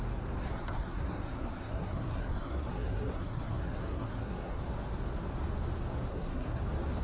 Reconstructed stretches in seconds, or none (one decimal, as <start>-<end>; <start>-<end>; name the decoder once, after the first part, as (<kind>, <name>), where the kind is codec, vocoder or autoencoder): 0.4-4.6 (codec, SNAC); 6.1-6.6